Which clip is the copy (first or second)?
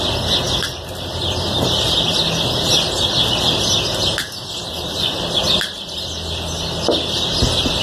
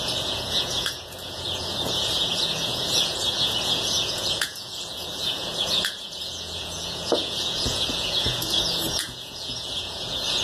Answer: second